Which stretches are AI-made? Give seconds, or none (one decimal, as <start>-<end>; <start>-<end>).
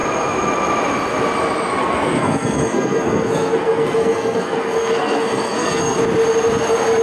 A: 1.8-6.0